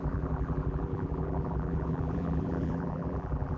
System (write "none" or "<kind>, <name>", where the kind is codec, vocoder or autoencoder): vocoder, BigVGAN v2